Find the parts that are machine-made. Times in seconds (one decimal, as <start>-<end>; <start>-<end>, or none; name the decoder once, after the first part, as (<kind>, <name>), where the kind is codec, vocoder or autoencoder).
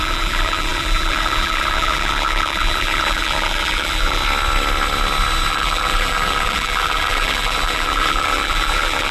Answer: 0.0-4.2 (vocoder, BigVGAN v2); 5.5-9.1